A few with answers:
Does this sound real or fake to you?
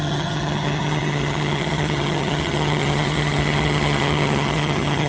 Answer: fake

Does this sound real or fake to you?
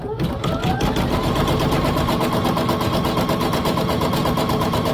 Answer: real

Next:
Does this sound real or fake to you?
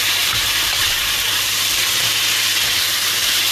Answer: fake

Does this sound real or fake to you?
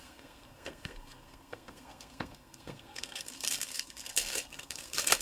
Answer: fake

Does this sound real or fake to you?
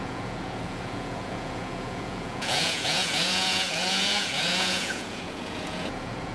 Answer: fake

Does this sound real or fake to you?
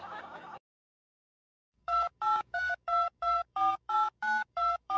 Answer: fake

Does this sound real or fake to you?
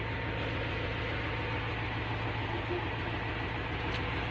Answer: real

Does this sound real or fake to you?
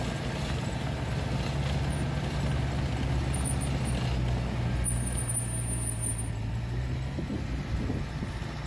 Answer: real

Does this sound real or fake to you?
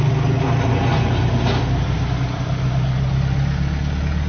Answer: real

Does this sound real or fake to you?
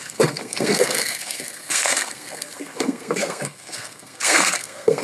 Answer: fake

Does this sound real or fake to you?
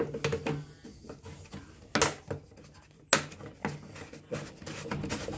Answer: real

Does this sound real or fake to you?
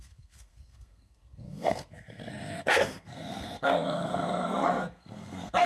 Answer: fake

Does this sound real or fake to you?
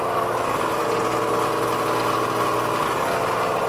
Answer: real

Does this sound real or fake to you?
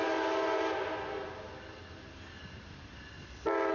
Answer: real